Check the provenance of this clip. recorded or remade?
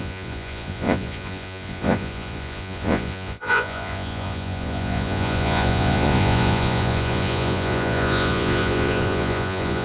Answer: remade